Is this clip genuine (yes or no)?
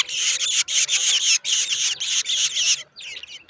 yes